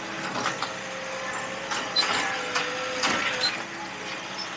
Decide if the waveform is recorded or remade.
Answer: recorded